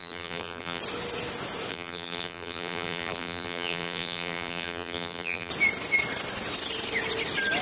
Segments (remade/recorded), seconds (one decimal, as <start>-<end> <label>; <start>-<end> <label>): 0.0-0.8 remade; 0.8-1.7 recorded; 1.7-5.5 remade; 5.5-7.6 recorded